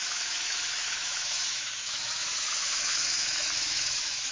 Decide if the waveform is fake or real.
fake